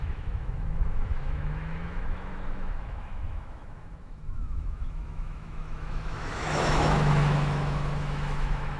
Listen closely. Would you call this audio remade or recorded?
remade